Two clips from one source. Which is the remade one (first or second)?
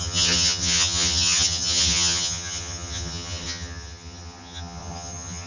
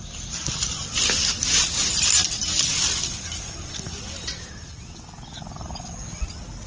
first